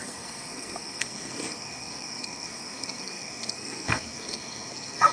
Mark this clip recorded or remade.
remade